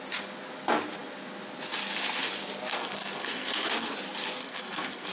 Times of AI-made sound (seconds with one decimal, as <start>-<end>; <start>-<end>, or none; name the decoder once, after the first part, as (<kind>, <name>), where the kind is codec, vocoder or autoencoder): 2.7-3.9 (codec, SNAC); 4.4-5.1